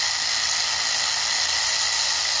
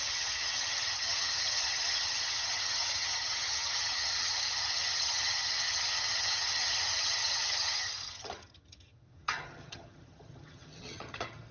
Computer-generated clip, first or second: second